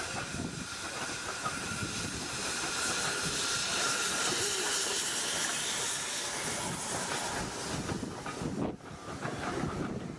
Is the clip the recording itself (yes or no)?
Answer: yes